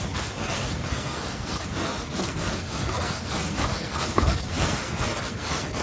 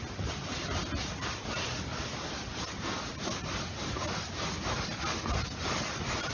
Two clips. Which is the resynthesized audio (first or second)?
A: first